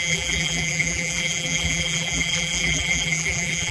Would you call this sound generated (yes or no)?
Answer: yes